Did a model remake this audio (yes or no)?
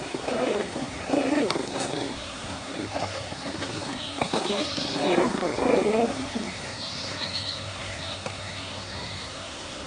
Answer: yes